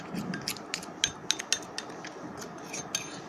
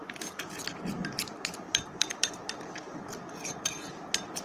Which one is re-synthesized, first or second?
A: second